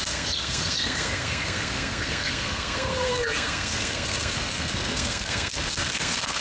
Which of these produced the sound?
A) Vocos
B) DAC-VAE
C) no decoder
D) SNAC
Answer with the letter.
D